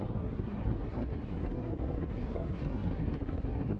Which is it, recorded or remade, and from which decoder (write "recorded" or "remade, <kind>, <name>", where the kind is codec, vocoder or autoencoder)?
remade, codec, SNAC